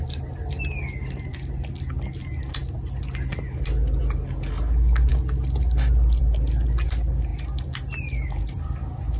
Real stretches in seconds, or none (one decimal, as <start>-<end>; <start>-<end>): 0.0-9.2